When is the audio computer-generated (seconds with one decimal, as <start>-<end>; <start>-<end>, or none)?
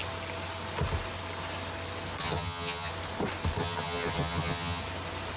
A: 2.2-2.9; 3.6-4.8